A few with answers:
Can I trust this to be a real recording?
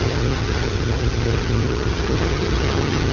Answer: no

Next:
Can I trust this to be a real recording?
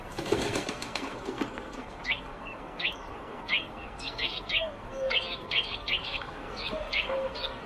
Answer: no